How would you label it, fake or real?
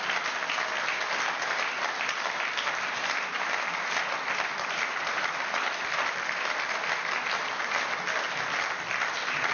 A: real